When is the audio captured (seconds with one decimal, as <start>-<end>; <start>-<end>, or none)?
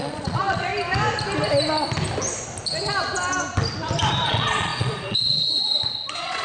0.7-4.3